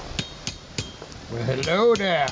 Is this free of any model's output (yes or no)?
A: yes